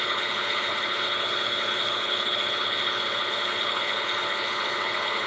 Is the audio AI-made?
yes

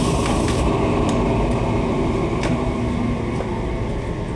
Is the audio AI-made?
no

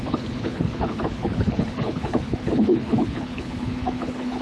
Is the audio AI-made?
yes